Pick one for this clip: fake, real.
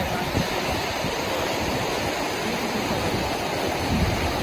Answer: real